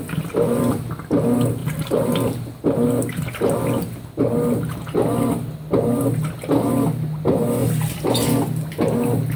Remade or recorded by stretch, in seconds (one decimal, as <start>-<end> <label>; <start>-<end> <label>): 0.0-1.6 recorded; 1.6-2.6 remade; 2.6-9.4 recorded